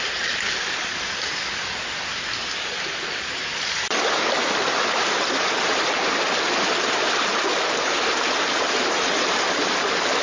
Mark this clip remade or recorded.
recorded